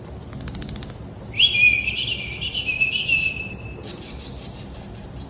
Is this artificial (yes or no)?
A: no